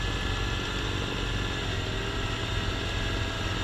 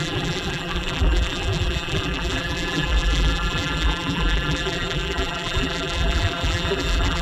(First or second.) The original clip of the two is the first